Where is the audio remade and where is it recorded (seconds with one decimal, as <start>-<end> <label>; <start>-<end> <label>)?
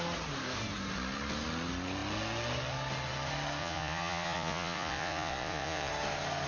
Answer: 0.0-3.6 recorded; 3.6-5.9 remade; 5.9-6.5 recorded